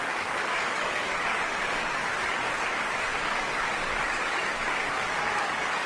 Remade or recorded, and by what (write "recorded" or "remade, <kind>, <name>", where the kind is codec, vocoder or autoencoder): remade, codec, DAC